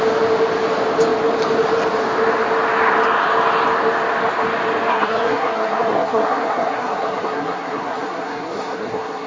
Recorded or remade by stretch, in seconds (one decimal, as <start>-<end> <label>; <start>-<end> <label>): 0.0-4.9 recorded; 4.9-9.3 remade